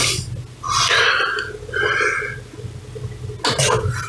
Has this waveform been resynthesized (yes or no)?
no